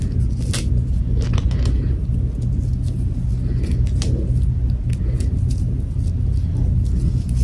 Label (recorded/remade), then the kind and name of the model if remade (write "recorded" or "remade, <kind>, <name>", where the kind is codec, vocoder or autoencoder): recorded